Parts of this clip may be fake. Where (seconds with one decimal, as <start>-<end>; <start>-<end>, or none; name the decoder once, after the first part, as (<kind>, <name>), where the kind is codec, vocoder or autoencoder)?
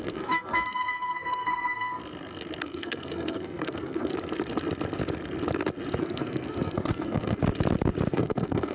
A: 0.0-2.0 (codec, SNAC); 2.6-4.1; 6.0-7.4; 8.1-8.7